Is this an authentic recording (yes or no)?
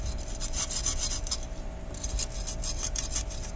yes